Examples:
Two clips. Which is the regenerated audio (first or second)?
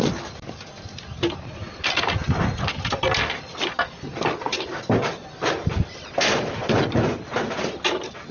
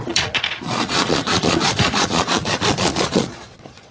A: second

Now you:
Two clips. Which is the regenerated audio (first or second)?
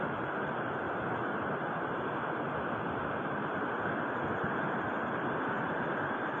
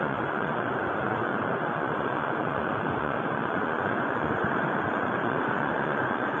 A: second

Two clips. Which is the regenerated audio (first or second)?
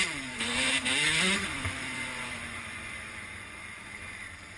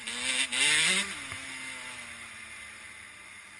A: first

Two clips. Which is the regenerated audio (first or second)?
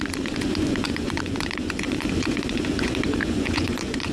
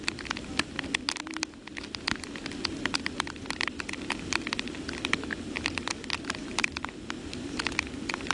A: first